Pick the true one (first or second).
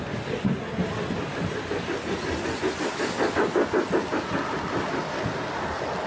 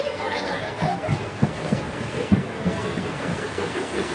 first